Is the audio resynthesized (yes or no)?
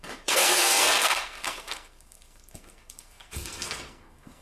yes